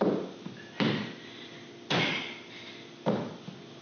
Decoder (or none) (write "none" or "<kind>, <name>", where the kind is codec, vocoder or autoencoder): none